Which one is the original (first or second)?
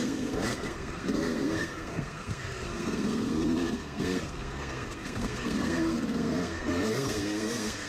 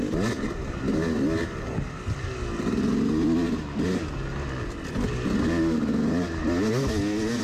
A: second